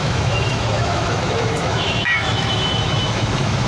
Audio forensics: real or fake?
fake